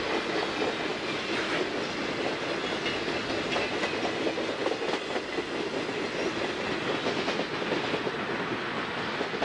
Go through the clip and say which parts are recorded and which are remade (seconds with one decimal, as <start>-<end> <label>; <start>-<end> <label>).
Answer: 0.0-9.4 recorded